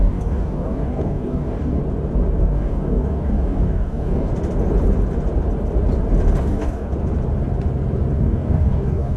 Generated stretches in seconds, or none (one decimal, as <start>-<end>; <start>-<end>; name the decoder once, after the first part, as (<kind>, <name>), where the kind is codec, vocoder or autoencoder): 0.0-1.8 (codec, DAC); 2.4-4.3; 6.4-6.9; 8.2-9.2